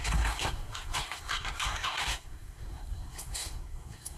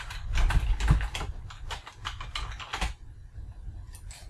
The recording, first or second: second